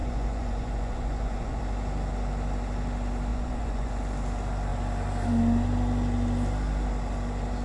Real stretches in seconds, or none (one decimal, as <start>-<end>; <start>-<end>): 1.6-3.3; 3.9-7.6